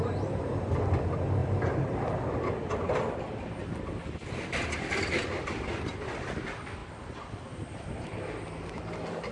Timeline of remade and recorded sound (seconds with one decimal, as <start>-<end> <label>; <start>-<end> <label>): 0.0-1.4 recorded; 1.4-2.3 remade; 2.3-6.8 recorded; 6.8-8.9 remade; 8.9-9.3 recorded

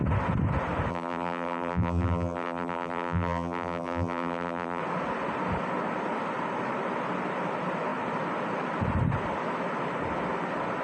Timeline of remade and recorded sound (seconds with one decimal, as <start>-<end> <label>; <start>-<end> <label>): 0.0-0.9 recorded; 0.9-4.8 remade; 4.8-10.8 recorded

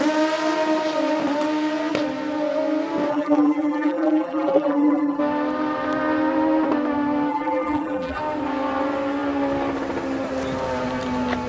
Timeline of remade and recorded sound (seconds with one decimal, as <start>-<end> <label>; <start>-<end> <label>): 0.0-3.1 recorded; 3.1-5.2 remade; 5.2-7.3 recorded; 7.3-8.2 remade; 8.2-11.5 recorded

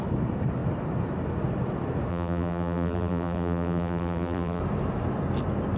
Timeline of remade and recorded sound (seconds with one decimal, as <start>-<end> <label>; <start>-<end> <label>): 0.0-2.1 recorded; 2.1-4.6 remade; 4.6-5.8 recorded

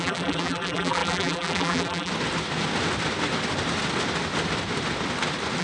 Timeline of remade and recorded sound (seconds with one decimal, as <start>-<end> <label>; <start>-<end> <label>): 0.0-2.1 remade; 2.1-5.6 recorded